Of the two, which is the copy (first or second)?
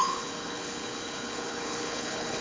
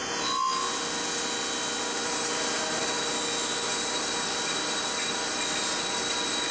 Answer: first